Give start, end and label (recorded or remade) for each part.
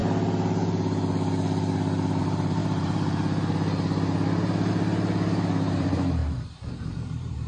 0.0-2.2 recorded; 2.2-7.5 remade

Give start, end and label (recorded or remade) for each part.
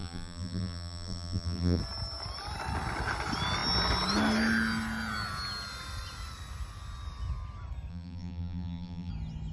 0.0-1.8 remade; 1.8-7.9 recorded; 7.9-9.1 remade; 9.1-9.5 recorded